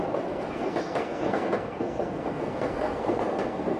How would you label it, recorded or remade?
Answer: remade